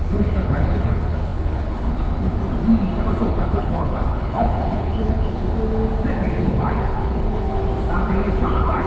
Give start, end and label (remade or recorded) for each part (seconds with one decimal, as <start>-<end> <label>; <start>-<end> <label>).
0.0-2.4 remade; 2.4-3.2 recorded; 3.2-5.4 remade; 5.4-6.1 recorded; 6.1-7.6 remade; 7.6-8.1 recorded; 8.1-8.9 remade